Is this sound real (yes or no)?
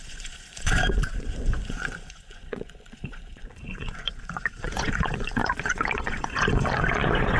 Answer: no